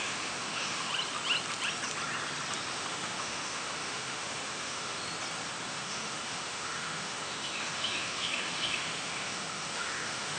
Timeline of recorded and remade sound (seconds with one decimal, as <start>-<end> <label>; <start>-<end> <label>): 0.0-0.9 remade; 0.9-2.7 recorded; 2.7-5.0 remade; 5.0-5.7 recorded; 5.7-10.4 remade